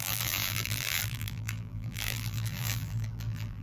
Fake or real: fake